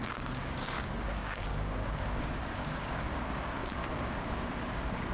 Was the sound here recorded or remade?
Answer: remade